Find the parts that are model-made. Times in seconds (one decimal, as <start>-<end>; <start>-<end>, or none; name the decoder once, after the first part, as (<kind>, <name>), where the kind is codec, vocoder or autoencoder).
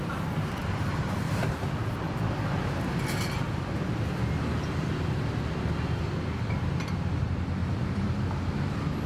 0.6-1.5 (vocoder, BigVGAN v2); 7.6-8.2